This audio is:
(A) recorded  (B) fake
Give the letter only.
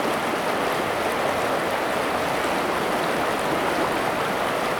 A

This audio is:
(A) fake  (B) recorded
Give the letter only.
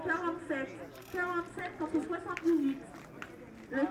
B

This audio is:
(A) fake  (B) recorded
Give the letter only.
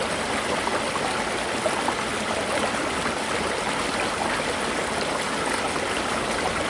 B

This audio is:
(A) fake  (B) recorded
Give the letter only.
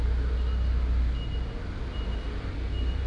B